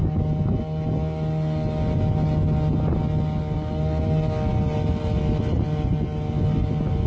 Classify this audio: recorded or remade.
recorded